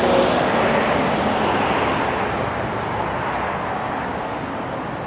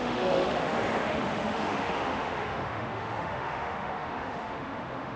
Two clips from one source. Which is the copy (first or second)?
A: second